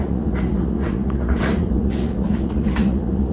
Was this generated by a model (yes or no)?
yes